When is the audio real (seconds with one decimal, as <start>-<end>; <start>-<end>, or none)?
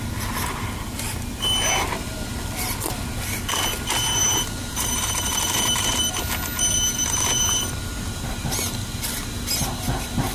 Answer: 0.0-4.2; 6.1-10.3